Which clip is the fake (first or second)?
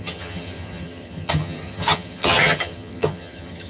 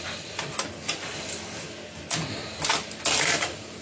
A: first